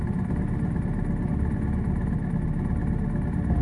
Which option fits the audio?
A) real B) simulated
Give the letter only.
A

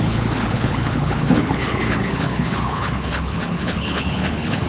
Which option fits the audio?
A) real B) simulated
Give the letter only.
B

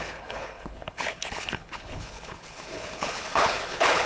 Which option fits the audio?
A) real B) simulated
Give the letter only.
B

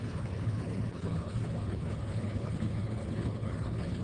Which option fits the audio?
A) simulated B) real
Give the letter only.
A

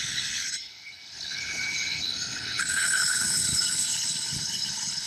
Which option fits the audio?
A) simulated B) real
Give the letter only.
A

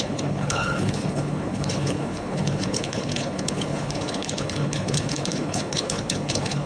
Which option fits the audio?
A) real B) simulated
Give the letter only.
B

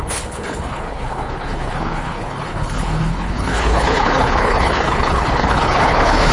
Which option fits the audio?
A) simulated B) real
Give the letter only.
A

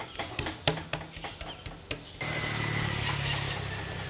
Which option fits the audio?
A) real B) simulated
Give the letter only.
A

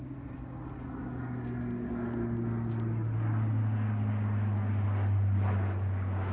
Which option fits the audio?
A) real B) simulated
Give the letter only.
A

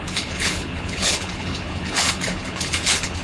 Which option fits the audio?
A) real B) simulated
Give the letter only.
B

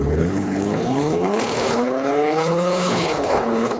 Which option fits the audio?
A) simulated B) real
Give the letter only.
A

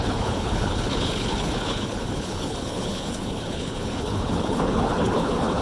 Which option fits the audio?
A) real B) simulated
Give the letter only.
B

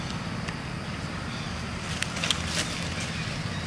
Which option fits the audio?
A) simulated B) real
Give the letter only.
B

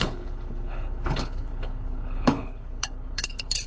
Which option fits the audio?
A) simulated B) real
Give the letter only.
A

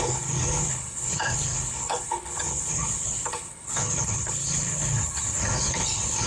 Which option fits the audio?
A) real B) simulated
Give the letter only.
B